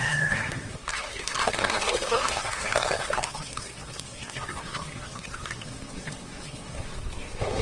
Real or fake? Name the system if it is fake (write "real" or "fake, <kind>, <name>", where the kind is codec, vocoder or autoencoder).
fake, codec, SNAC